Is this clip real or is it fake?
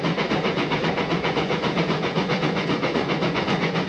fake